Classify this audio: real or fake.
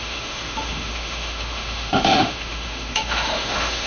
fake